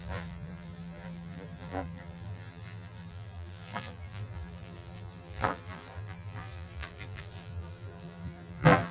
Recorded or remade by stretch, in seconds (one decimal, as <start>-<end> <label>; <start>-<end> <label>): 0.0-8.9 remade